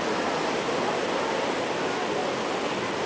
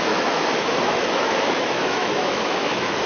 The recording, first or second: first